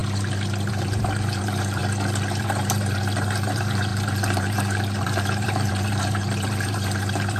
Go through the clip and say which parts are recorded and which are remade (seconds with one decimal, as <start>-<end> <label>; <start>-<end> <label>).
0.0-0.7 recorded; 0.7-1.8 remade; 1.8-2.4 recorded; 2.4-7.4 remade